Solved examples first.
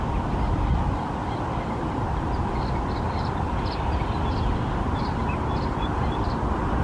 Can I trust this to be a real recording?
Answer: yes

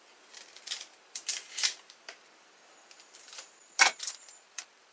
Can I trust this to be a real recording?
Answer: no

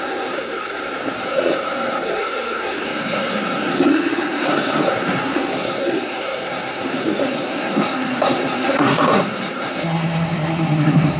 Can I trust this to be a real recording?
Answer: no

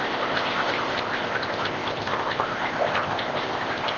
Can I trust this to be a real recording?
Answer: no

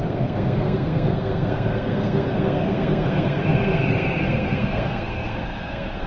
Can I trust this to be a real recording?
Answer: no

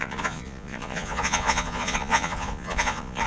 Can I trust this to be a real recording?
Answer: no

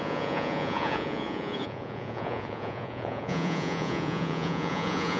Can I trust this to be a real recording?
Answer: no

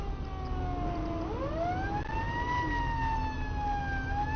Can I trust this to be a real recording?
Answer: yes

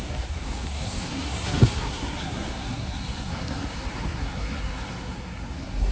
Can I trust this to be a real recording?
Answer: no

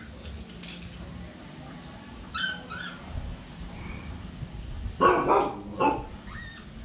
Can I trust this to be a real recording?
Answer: yes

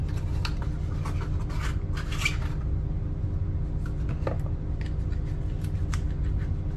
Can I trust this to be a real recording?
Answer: yes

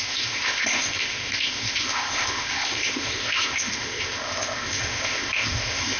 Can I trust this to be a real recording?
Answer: no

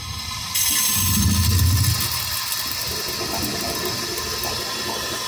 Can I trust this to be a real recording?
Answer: yes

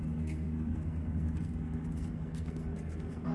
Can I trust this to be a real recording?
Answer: no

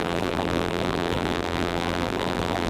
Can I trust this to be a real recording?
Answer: no